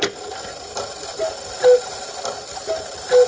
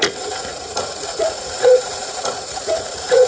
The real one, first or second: first